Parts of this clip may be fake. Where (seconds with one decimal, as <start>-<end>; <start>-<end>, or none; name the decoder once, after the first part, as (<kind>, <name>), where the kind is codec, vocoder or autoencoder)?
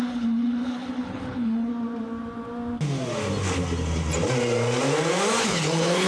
0.0-1.7 (codec, HILCodec); 5.4-6.1